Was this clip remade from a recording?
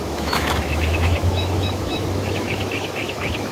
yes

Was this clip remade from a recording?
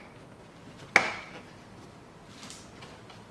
no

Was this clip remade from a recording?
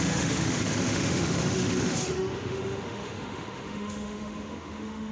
yes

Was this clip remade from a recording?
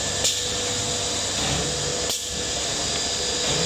no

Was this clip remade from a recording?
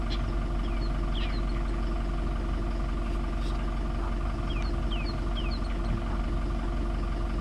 no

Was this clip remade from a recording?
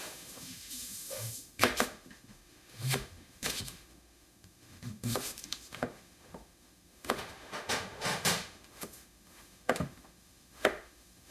yes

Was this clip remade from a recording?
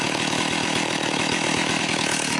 yes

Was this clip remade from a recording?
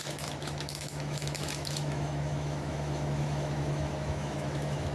yes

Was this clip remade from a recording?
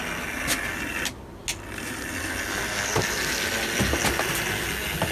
no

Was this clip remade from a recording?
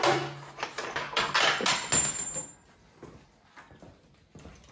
no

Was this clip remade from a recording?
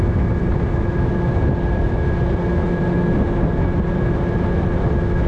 no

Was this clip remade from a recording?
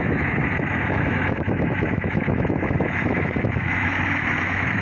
yes